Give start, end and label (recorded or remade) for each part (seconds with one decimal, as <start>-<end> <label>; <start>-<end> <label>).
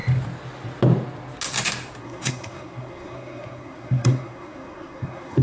0.0-2.0 recorded; 2.0-5.4 remade